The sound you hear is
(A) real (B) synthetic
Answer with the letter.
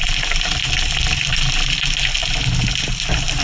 A